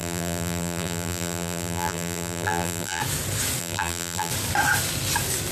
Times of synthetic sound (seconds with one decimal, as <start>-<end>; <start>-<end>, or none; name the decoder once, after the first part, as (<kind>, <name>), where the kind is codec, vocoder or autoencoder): 0.0-3.0 (vocoder, BigVGAN v2); 3.6-4.3